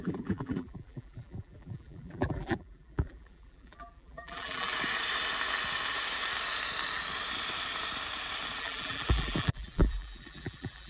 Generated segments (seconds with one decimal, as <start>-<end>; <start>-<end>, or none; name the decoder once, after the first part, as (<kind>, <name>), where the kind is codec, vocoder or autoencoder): 0.0-4.7 (vocoder, BigVGAN v2); 8.6-10.9